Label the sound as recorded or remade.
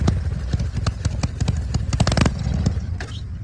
recorded